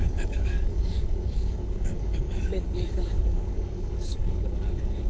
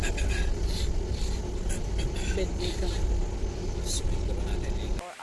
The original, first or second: second